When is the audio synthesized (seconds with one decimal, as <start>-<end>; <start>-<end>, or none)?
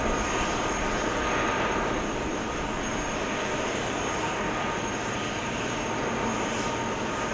1.5-5.9